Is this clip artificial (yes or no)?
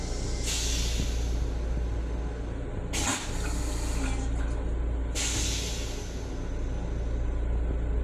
no